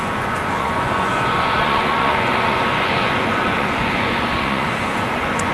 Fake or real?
fake